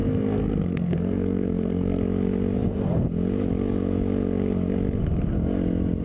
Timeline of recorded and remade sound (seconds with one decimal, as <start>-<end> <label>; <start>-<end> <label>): 0.0-2.0 remade; 2.0-6.0 recorded